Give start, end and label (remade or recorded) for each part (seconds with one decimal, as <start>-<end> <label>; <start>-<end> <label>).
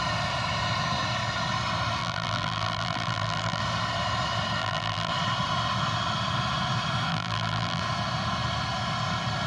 0.0-2.0 recorded; 2.0-3.6 remade; 3.6-4.6 recorded; 4.6-5.1 remade; 5.1-7.1 recorded; 7.1-7.8 remade; 7.8-9.5 recorded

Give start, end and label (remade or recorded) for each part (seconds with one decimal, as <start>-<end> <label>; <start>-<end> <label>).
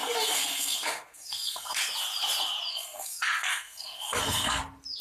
0.0-1.8 remade; 1.8-2.7 recorded; 2.7-4.6 remade; 4.6-5.0 recorded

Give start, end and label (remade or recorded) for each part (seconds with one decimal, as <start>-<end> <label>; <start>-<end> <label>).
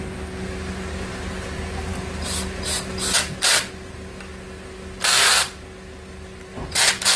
0.0-7.2 recorded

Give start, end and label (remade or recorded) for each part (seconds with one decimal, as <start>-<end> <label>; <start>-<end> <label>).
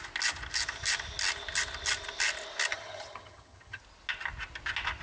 0.0-2.7 recorded; 2.7-3.8 remade; 3.8-5.0 recorded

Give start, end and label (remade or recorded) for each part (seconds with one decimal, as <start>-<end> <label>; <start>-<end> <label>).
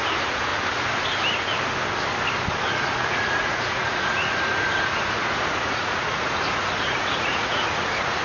0.0-0.5 remade; 0.5-2.7 recorded; 2.7-8.2 remade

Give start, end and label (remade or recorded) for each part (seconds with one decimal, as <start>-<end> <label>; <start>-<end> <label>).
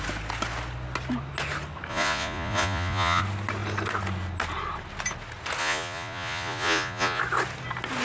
0.0-1.9 recorded; 1.9-3.2 remade; 3.2-5.6 recorded; 5.6-7.2 remade; 7.2-8.0 recorded